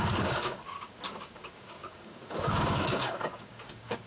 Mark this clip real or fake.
fake